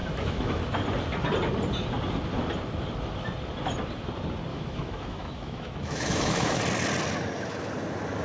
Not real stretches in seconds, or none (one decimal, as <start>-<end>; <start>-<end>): 0.0-0.6; 4.5-6.6